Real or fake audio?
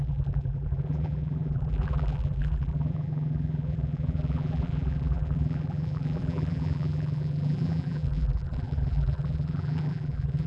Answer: fake